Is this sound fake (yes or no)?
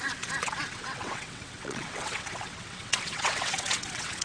yes